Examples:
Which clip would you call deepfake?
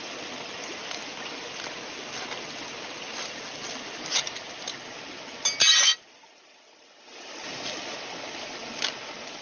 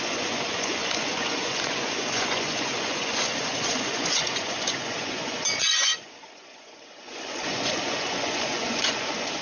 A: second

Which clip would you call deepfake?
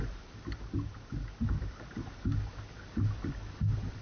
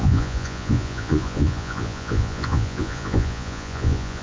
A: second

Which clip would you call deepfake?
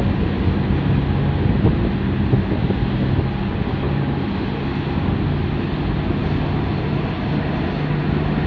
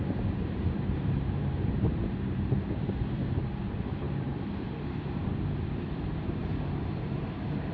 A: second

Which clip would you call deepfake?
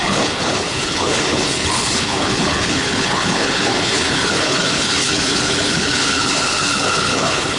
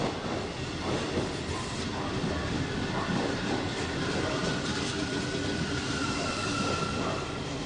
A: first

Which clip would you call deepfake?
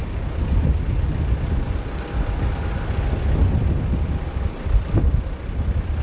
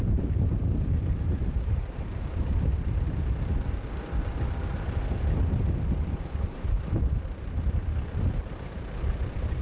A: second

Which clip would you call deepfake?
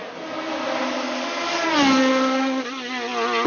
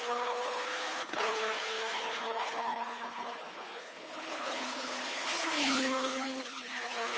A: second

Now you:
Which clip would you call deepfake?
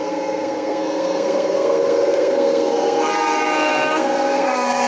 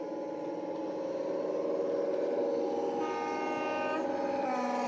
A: first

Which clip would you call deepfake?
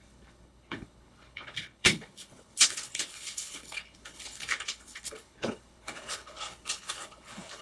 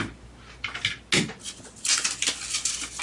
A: first